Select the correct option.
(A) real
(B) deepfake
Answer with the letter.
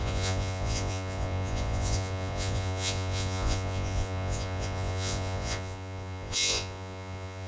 B